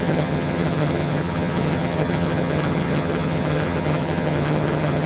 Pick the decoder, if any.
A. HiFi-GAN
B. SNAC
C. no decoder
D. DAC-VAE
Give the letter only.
A